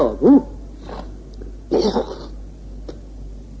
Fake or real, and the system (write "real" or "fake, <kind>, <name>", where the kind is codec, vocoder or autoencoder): real